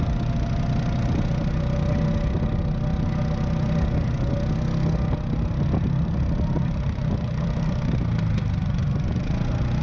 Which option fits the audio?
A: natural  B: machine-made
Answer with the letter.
A